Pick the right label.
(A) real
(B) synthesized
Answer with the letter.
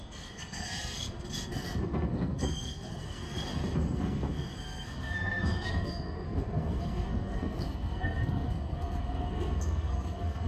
B